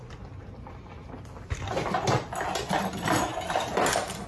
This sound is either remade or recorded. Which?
recorded